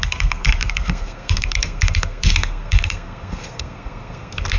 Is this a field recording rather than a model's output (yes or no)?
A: no